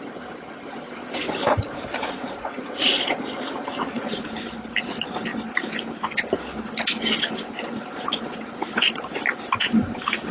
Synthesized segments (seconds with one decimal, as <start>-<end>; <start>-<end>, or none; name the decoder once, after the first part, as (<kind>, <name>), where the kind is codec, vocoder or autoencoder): 1.4-4.1 (vocoder, Vocos)